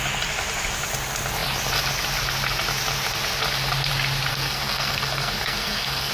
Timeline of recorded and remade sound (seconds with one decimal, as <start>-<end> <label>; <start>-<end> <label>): 0.0-4.3 recorded; 4.3-6.1 remade